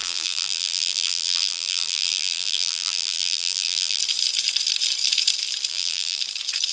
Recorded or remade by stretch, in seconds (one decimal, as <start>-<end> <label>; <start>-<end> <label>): 0.0-4.0 remade; 4.0-5.7 recorded; 5.7-6.2 remade; 6.2-6.7 recorded